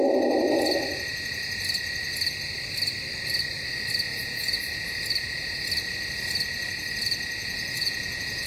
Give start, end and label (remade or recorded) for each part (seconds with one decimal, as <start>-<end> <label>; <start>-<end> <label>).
0.0-4.1 recorded; 4.1-4.6 remade; 4.6-7.4 recorded; 7.4-8.5 remade